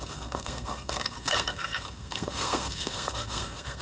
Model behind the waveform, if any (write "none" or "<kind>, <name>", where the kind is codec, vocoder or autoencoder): codec, SNAC